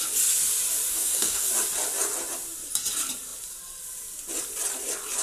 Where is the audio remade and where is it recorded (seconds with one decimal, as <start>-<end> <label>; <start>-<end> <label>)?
0.0-0.9 recorded; 0.9-1.5 remade; 1.5-5.2 recorded